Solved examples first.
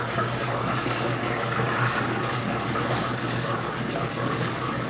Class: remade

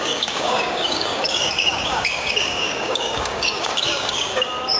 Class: remade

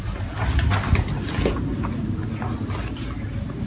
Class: recorded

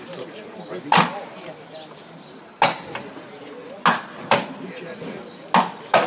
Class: recorded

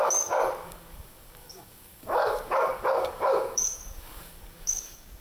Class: remade